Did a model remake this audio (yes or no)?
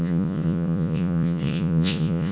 yes